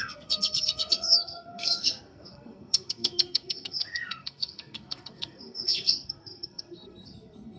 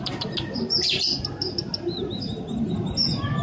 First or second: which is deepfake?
first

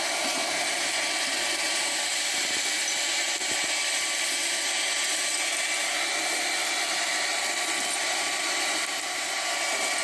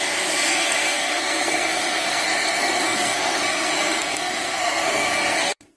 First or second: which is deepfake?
second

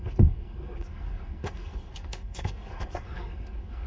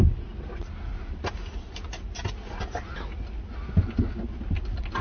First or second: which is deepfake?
first